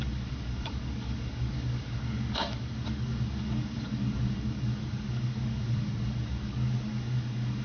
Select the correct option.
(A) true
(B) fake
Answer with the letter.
B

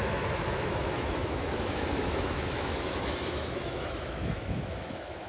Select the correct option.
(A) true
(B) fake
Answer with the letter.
B